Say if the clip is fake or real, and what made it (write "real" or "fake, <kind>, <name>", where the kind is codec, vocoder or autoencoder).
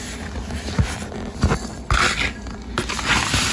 real